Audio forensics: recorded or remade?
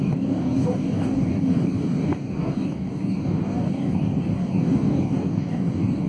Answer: remade